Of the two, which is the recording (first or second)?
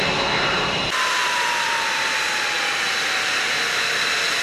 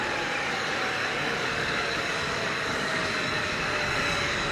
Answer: first